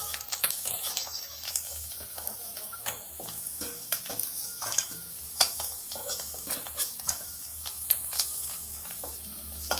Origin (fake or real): fake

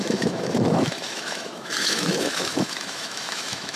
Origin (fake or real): fake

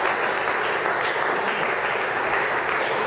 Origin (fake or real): real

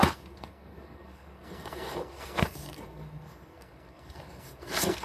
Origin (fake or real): fake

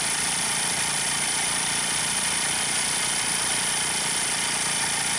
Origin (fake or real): real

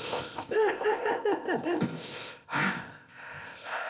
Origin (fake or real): fake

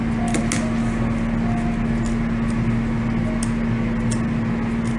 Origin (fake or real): real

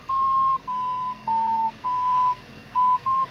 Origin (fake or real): fake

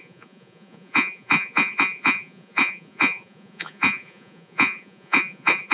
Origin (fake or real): fake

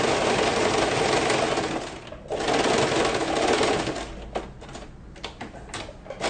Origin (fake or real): real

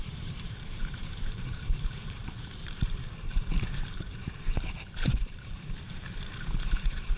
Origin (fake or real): fake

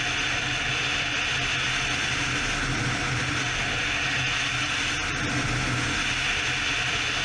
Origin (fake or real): real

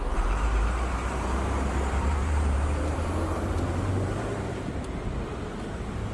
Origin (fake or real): fake